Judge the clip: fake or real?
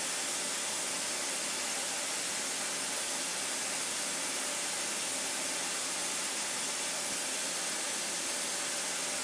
real